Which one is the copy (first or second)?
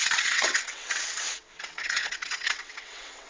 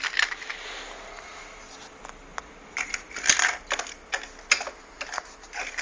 first